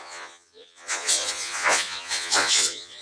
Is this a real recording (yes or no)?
no